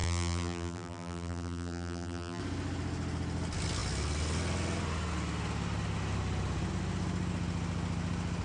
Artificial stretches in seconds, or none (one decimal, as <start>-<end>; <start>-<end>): 0.0-2.4